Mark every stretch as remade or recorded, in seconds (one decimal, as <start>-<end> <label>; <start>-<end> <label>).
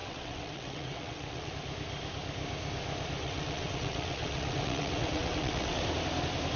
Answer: 0.0-1.5 remade; 1.5-3.2 recorded; 3.2-5.8 remade; 5.8-6.6 recorded